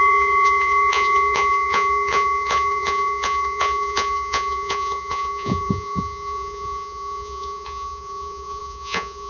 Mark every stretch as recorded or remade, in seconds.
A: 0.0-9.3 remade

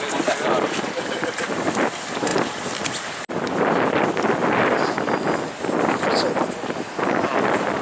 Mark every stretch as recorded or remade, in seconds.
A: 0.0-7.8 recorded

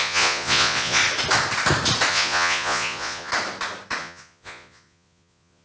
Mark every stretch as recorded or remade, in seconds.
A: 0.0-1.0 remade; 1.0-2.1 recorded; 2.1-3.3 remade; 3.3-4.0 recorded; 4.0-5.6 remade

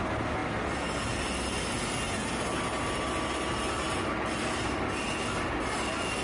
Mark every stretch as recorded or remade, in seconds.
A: 0.0-6.2 recorded

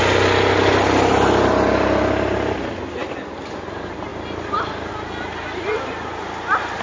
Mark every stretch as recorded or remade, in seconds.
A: 0.0-6.8 recorded

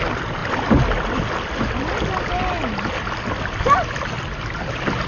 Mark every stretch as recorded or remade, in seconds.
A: 0.0-5.1 recorded